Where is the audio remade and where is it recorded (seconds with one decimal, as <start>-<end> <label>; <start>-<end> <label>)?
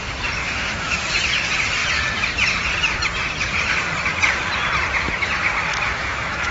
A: 0.0-0.4 recorded; 0.4-1.0 remade; 1.0-5.7 recorded; 5.7-6.5 remade